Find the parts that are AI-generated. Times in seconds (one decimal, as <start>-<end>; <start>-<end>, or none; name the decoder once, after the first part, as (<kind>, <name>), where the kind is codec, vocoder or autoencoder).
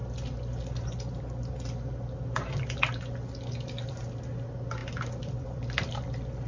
4.8-6.0 (vocoder, BigVGAN v2)